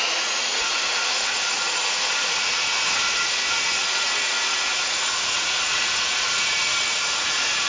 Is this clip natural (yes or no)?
no